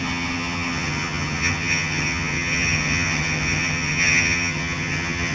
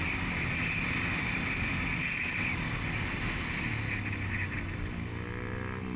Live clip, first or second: second